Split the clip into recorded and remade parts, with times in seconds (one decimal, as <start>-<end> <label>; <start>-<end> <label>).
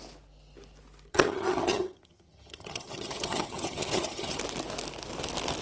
0.0-1.1 recorded; 1.1-4.4 remade; 4.4-5.6 recorded